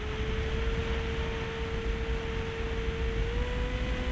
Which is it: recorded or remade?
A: recorded